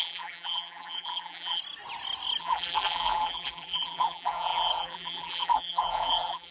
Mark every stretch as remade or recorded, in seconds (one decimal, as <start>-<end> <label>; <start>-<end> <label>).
0.0-1.6 remade; 1.6-2.4 recorded; 2.4-6.5 remade

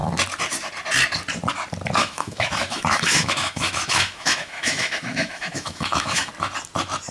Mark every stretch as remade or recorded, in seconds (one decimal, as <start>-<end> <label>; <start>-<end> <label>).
0.0-2.0 recorded; 2.0-6.3 remade; 6.3-7.1 recorded